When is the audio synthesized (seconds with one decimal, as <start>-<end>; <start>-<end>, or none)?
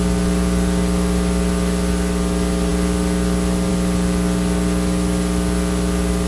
none